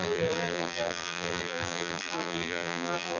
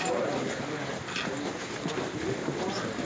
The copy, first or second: first